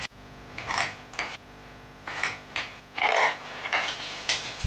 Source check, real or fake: real